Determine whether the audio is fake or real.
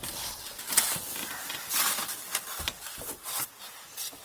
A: fake